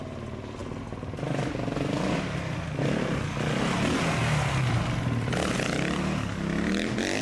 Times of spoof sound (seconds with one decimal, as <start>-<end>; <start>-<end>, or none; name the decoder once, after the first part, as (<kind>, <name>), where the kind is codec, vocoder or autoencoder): none